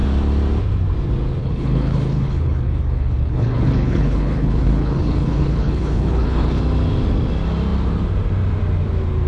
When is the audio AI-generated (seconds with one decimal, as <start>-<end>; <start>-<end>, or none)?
1.4-6.6